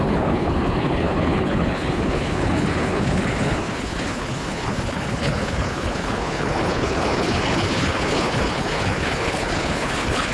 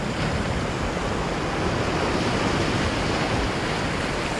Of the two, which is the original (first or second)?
second